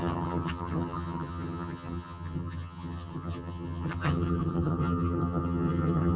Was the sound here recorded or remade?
remade